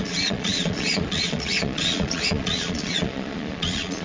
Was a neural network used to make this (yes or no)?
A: yes